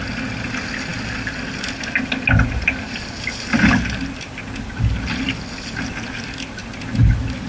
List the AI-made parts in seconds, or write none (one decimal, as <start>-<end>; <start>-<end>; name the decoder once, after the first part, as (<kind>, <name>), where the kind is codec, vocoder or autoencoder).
none